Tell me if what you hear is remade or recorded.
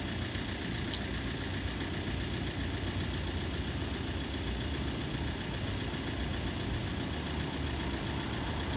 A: recorded